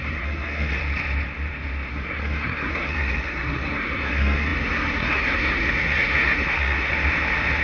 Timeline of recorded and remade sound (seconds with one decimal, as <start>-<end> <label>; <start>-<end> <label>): 0.0-0.8 remade; 0.8-1.9 recorded; 1.9-6.9 remade; 6.9-7.6 recorded

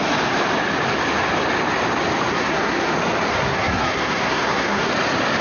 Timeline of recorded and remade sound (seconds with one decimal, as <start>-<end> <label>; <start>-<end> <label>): 0.0-2.3 recorded; 2.3-2.9 remade; 2.9-3.3 recorded; 3.3-4.9 remade; 4.9-5.4 recorded

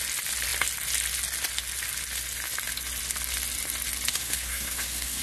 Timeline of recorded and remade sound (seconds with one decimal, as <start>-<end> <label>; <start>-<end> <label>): 0.0-4.1 recorded; 4.1-5.2 remade

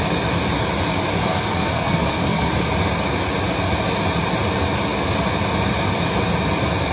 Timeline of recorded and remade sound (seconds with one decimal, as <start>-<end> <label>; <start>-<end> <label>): 0.0-1.2 recorded; 1.2-2.5 remade; 2.5-6.9 recorded

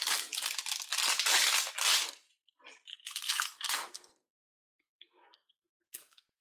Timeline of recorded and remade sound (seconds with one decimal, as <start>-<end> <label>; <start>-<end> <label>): 0.0-2.9 recorded; 2.9-6.4 remade

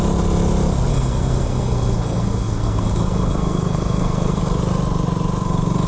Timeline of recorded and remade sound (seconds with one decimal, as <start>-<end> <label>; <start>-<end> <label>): 0.0-0.9 recorded; 0.9-4.4 remade; 4.4-5.9 recorded